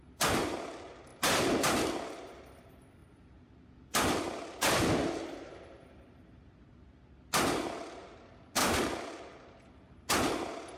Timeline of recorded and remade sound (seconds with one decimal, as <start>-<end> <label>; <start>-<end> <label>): 0.0-3.0 recorded; 3.0-7.0 remade; 7.0-8.6 recorded; 8.6-9.2 remade; 9.2-10.8 recorded